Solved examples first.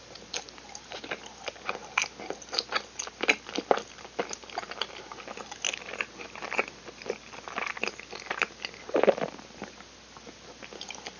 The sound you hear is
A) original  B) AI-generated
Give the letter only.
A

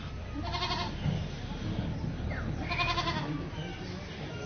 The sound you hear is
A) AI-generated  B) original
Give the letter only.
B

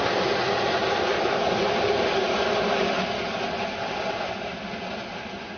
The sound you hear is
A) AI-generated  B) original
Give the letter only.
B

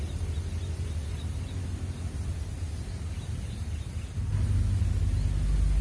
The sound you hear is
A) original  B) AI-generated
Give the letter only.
A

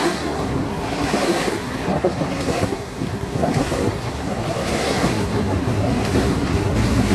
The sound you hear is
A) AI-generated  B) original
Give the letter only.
A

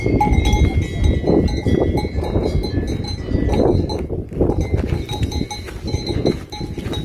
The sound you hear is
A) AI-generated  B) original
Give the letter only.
B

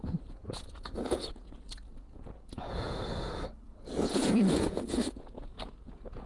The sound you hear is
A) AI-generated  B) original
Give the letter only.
A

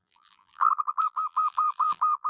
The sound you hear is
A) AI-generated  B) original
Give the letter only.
A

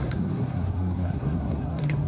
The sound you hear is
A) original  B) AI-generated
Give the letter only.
B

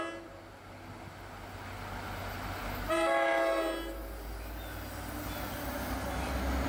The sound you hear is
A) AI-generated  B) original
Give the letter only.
B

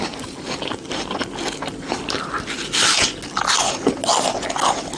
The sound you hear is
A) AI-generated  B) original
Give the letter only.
B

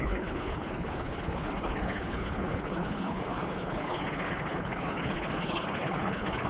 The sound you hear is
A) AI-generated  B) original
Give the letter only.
A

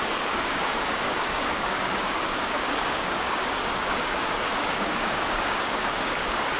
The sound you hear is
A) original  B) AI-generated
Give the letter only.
B